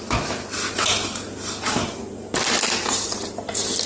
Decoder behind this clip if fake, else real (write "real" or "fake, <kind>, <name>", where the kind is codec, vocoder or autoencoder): real